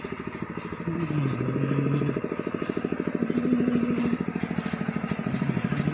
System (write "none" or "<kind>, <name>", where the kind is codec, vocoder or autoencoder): none